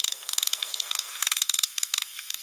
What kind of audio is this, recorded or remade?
remade